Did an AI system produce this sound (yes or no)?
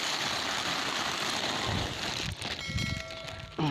no